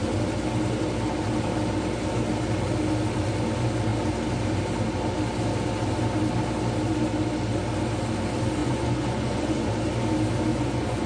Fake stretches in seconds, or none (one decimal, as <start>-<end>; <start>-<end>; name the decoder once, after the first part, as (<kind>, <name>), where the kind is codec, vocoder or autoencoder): 8.6-9.7 (vocoder, Vocos); 10.5-11.1